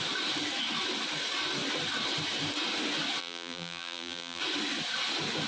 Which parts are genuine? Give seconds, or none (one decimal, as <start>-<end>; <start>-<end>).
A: 0.0-3.2; 4.4-5.5